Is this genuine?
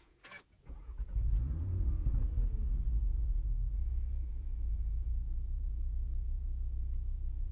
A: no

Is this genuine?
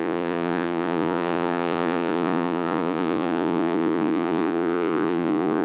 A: no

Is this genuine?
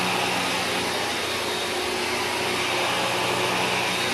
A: yes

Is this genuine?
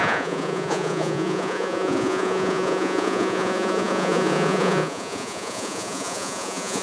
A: no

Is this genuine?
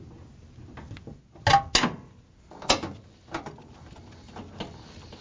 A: yes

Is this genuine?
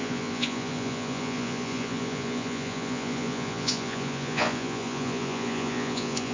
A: no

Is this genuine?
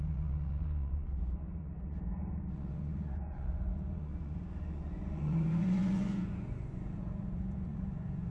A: no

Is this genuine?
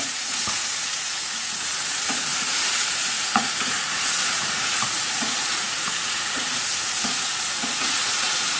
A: no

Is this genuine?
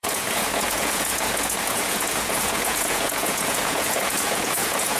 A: no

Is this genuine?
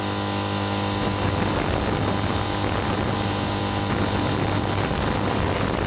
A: yes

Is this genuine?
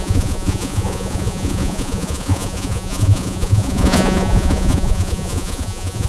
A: no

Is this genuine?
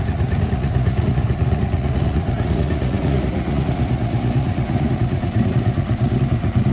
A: no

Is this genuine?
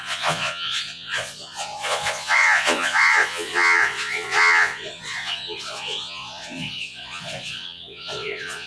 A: no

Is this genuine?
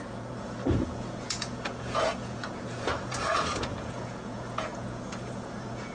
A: no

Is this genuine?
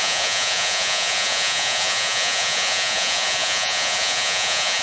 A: no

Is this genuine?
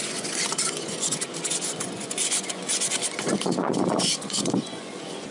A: no